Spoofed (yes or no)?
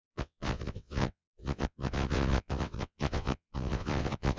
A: yes